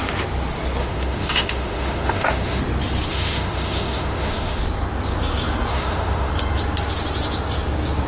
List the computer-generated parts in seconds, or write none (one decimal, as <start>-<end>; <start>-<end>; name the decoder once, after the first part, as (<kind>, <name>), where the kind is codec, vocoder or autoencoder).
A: 0.8-2.6 (autoencoder, DAC-VAE); 3.1-4.6; 5.7-6.3